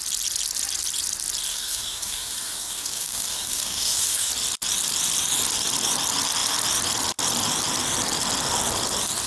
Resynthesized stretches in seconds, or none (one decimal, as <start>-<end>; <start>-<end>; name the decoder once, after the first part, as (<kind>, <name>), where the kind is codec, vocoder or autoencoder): 1.5-4.3 (codec, DAC)